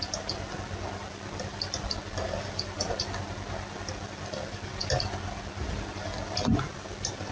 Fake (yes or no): no